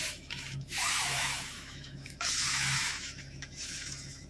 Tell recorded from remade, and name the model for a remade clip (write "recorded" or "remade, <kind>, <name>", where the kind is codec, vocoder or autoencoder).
remade, autoencoder, DAC-VAE